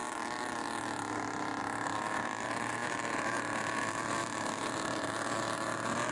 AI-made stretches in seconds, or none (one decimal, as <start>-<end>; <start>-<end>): 1.6-6.1